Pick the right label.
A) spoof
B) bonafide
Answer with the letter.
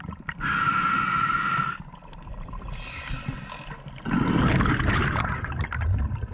B